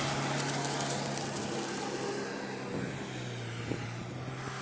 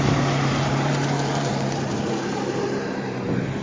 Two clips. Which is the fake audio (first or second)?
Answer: second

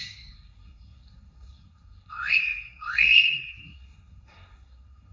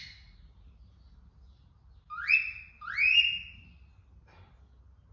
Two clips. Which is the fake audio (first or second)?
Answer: first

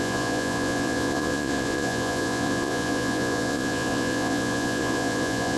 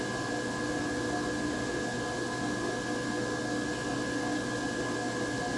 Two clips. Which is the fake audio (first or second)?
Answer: first